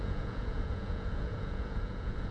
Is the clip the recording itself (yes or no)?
no